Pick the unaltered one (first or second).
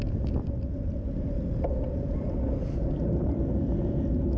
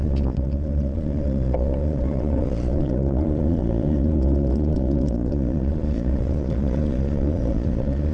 first